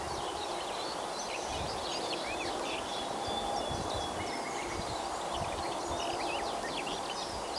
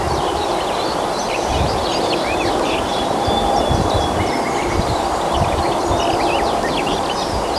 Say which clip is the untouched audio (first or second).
first